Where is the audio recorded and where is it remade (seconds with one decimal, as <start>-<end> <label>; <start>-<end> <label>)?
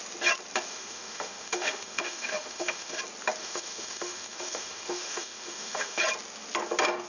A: 0.0-0.7 recorded; 0.7-3.0 remade; 3.0-3.4 recorded; 3.4-6.0 remade; 6.0-7.1 recorded